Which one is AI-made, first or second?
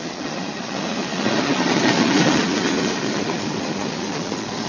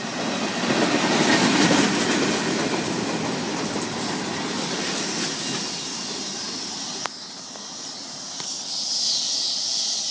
first